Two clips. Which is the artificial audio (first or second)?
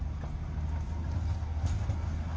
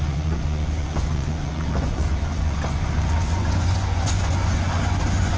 second